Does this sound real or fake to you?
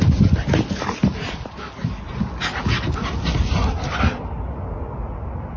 real